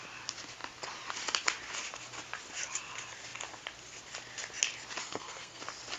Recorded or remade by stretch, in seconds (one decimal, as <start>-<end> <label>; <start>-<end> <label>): 0.0-5.0 recorded; 5.0-5.6 remade; 5.6-6.0 recorded